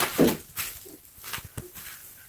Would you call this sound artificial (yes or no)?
no